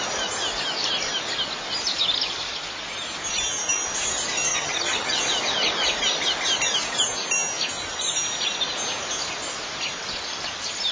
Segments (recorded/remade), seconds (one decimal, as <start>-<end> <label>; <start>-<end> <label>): 0.0-4.5 recorded; 4.5-5.2 remade; 5.2-10.9 recorded